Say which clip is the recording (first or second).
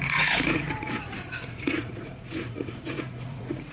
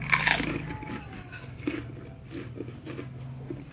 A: second